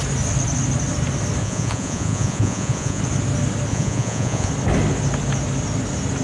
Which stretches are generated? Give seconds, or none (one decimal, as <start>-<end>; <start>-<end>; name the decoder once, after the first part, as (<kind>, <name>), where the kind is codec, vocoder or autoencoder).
1.4-3.0 (vocoder, Vocos); 3.7-4.5